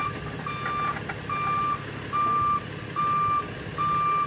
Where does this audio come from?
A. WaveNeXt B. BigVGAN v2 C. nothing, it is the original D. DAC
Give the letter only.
C